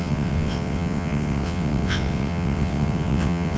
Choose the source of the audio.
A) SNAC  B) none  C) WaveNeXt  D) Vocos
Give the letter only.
C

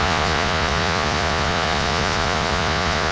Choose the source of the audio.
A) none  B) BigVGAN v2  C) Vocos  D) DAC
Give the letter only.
C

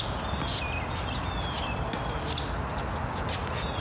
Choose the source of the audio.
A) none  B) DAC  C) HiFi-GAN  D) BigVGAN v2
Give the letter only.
A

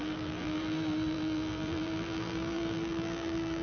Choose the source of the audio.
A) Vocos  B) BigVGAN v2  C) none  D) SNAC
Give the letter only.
B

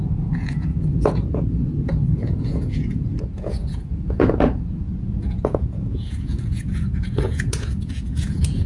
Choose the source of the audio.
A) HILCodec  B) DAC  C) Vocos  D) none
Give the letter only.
C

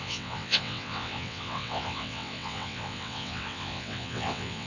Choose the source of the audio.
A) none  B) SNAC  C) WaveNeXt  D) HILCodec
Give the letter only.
C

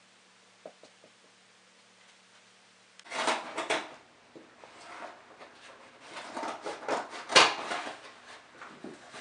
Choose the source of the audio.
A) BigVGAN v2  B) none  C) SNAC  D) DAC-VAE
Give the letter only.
B